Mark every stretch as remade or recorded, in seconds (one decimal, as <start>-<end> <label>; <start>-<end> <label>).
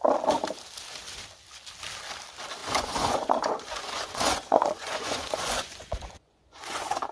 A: 0.0-2.6 recorded; 2.6-7.1 remade